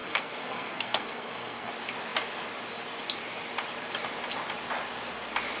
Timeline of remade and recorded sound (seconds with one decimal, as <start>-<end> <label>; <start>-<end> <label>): 0.0-1.7 remade; 1.7-5.6 recorded